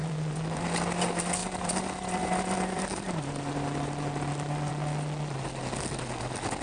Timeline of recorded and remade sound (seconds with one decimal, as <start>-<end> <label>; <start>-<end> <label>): 0.0-0.6 remade; 0.6-1.4 recorded; 1.4-4.7 remade; 4.7-6.6 recorded

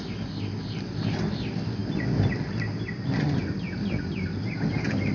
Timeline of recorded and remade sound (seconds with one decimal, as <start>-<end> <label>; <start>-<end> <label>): 0.0-5.1 recorded

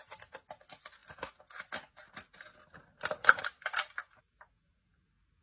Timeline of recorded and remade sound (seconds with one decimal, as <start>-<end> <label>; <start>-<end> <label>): 0.0-5.4 recorded

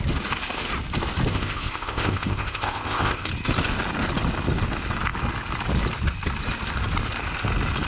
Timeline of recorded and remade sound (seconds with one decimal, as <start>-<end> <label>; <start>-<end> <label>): 0.0-1.3 recorded; 1.3-3.3 remade; 3.3-7.9 recorded

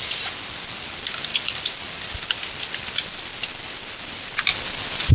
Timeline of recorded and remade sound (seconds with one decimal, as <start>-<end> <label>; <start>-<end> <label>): 0.0-5.1 recorded

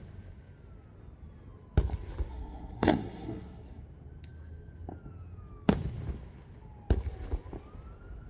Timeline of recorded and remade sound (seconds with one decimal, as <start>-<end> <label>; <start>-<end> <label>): 0.0-2.3 recorded; 2.3-3.8 remade; 3.8-8.3 recorded